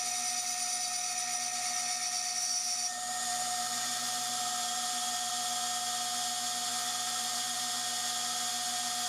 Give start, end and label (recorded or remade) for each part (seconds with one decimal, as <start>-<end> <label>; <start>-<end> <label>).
0.0-2.9 recorded; 2.9-5.3 remade; 5.3-6.7 recorded; 6.7-7.7 remade; 7.7-9.1 recorded